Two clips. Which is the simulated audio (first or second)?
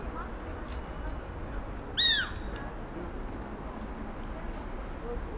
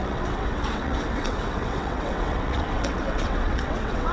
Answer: second